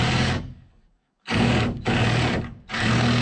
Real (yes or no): no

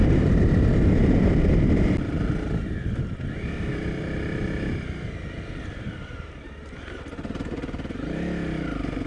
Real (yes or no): yes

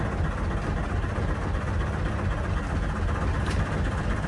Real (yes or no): yes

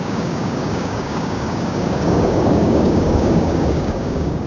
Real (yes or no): no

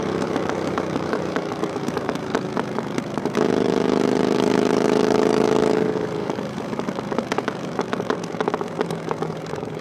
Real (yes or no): no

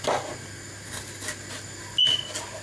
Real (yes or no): yes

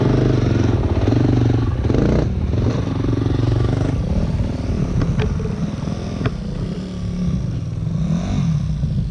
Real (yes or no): yes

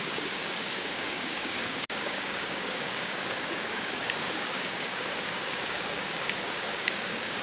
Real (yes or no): no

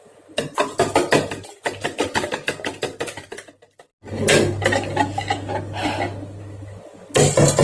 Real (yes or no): yes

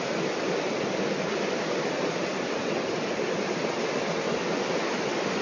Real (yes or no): yes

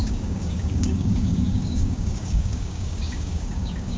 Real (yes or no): no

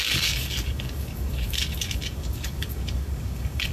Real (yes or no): no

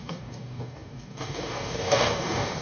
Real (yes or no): no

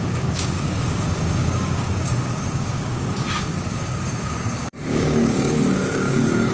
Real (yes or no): no